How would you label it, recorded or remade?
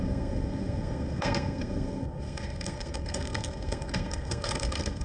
remade